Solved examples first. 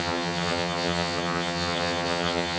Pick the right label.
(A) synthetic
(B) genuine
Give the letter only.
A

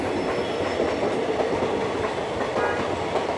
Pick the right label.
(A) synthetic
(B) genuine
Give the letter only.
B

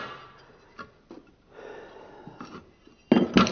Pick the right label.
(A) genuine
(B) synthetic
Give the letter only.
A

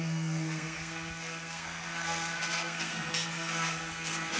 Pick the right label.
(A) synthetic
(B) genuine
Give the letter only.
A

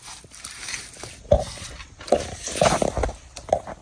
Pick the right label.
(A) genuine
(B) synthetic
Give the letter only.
A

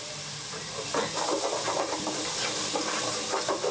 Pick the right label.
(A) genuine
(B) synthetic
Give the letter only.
A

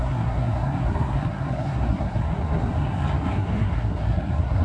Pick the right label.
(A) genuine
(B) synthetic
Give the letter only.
B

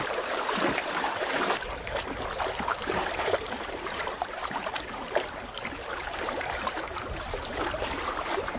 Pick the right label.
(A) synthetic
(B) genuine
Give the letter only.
A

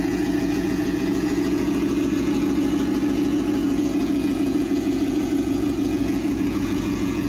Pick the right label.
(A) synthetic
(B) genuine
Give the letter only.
A